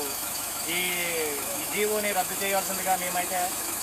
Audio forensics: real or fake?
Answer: fake